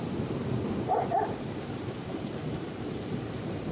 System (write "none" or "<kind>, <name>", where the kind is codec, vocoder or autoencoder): vocoder, BigVGAN v2